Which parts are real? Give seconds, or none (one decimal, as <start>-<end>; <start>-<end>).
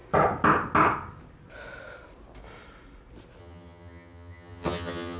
0.0-3.4